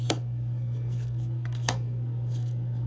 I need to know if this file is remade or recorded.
remade